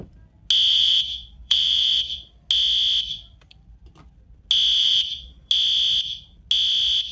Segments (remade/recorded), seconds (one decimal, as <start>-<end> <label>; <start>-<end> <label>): 0.0-0.7 recorded; 0.7-2.3 remade; 2.3-4.8 recorded; 4.8-5.5 remade; 5.5-7.1 recorded